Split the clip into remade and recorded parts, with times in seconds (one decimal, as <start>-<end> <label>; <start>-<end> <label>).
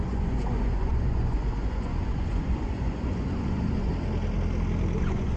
0.0-3.9 remade; 3.9-5.0 recorded; 5.0-5.4 remade